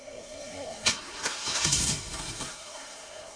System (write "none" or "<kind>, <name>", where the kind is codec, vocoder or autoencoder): codec, SNAC